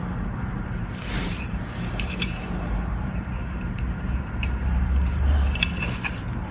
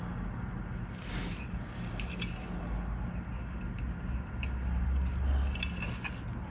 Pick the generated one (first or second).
first